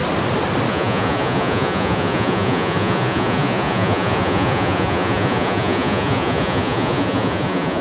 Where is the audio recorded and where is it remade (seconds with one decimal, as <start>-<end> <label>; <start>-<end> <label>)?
0.0-0.7 recorded; 0.7-7.8 remade